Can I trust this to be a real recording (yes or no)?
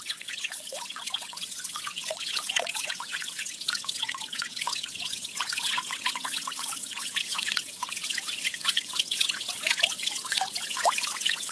no